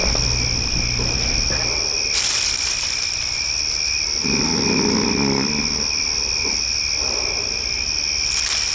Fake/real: real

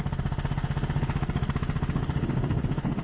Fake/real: fake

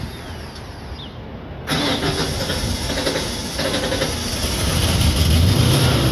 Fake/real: real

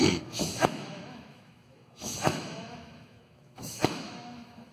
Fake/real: fake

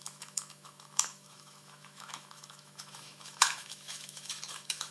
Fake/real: fake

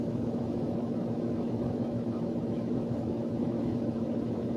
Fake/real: fake